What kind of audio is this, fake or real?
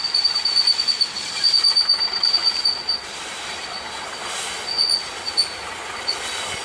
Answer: real